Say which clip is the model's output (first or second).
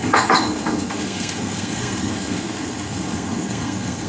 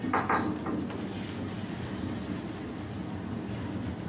first